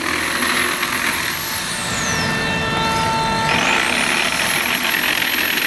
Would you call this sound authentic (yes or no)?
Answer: yes